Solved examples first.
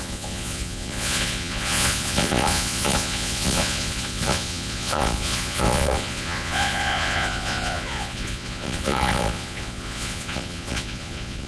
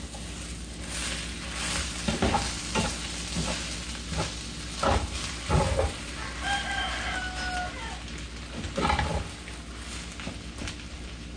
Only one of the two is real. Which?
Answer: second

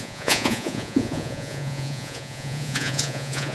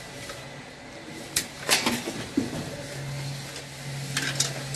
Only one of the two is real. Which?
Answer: second